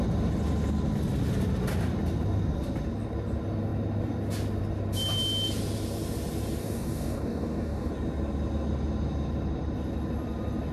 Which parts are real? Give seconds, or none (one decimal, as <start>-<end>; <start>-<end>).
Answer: 0.0-6.6; 7.9-10.7